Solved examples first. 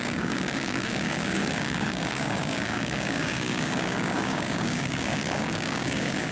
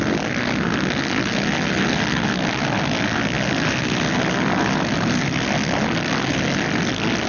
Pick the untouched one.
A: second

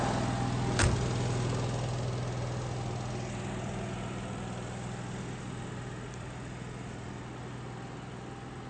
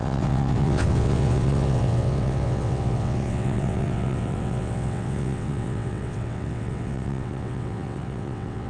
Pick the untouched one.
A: first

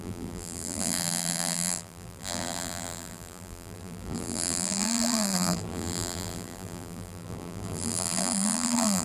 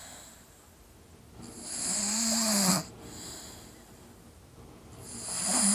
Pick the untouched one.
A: second